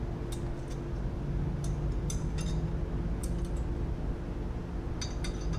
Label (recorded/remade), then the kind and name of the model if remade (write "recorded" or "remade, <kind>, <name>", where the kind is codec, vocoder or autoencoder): recorded